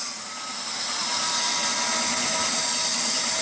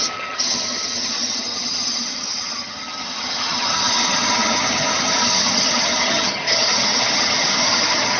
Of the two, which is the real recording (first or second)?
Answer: first